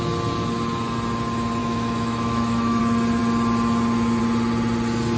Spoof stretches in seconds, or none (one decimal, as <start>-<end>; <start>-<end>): 1.6-2.8